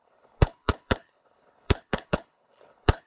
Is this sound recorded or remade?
remade